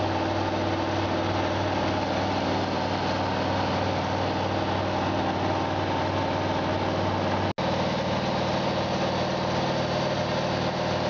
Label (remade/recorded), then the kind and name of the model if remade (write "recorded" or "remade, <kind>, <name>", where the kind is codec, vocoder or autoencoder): recorded